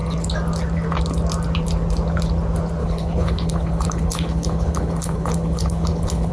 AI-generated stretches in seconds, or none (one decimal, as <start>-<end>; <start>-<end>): 2.8-6.3